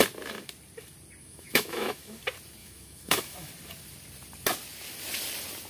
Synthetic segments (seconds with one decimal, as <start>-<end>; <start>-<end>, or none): 1.2-2.2; 2.6-3.5